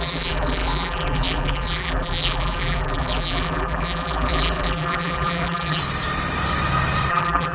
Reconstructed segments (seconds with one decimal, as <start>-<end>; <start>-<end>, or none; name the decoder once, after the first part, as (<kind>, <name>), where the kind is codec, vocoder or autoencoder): 0.0-5.8 (vocoder, BigVGAN v2); 7.1-7.5

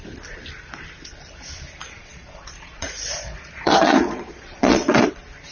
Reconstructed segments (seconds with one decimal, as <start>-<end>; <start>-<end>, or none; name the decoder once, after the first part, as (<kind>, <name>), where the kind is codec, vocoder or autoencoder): 1.8-5.1 (vocoder, Vocos)